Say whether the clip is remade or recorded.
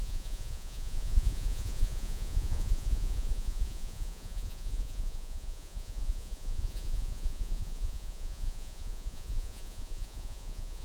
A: remade